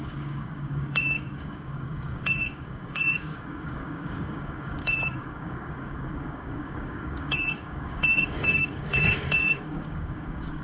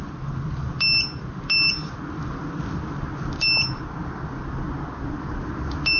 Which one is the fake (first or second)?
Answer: first